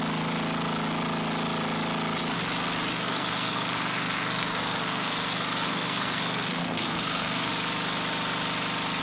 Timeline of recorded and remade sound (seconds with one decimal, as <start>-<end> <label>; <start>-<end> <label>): 0.0-2.9 recorded; 2.9-7.5 remade; 7.5-9.0 recorded